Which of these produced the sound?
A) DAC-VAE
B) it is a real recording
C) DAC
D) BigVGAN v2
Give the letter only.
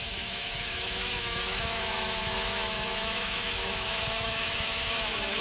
A